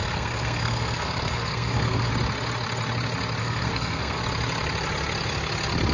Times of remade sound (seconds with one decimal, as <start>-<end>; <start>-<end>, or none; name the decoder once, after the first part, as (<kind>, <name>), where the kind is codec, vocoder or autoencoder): 0.0-2.1 (codec, SNAC); 3.4-4.2